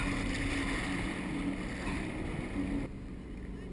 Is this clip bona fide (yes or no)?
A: yes